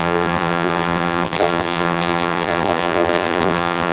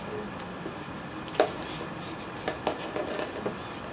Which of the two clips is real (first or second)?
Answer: second